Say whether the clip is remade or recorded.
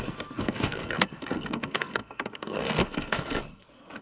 remade